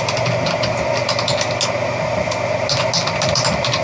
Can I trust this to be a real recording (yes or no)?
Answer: yes